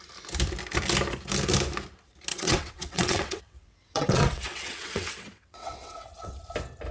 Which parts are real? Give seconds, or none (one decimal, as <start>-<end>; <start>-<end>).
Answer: 0.0-2.3; 6.4-6.9